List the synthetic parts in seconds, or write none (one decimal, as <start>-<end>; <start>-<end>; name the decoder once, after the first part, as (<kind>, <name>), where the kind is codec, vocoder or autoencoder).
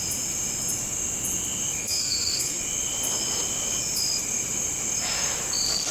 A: 1.8-2.6 (codec, SNAC)